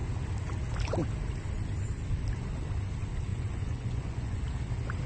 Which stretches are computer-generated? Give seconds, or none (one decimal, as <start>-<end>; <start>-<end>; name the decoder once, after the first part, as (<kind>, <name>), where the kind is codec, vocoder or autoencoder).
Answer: 3.3-4.4 (vocoder, Vocos)